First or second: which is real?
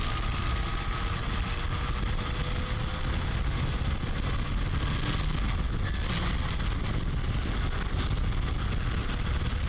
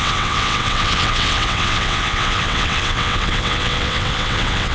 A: first